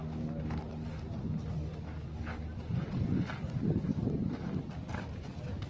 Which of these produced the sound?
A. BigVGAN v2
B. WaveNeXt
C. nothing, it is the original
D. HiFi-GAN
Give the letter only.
C